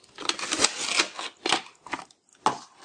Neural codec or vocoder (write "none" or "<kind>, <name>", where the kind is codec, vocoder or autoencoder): none